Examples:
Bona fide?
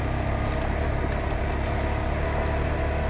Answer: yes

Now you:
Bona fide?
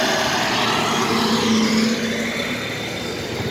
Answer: yes